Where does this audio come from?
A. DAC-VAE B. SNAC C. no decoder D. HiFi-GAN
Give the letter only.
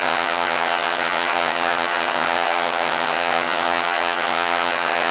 D